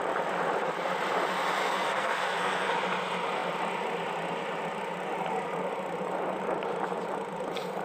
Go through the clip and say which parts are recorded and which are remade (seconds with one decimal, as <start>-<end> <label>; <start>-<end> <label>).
0.0-1.6 recorded; 1.6-2.7 remade; 2.7-7.8 recorded